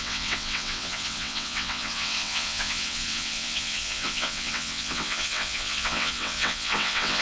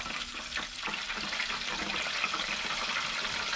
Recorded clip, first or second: second